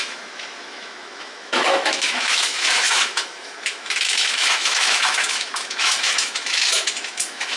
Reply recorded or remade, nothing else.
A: remade